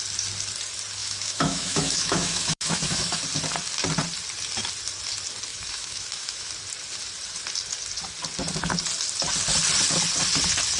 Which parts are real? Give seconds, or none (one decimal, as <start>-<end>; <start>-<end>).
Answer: 0.0-1.0; 3.2-5.5; 6.5-10.8

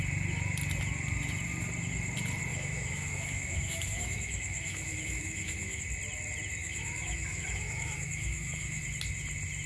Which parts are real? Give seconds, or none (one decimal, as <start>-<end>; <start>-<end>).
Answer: 0.0-2.5; 5.8-6.6; 8.8-9.7

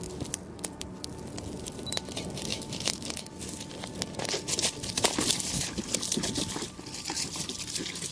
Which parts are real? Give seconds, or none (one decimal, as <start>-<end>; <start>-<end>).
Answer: 0.0-2.5; 3.3-8.1

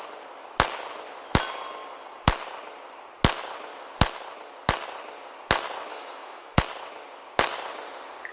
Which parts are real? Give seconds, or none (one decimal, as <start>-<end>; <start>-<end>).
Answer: 0.0-5.9; 6.6-8.3

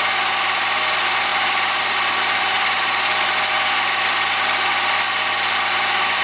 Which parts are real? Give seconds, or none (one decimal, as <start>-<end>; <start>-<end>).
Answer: 0.0-6.2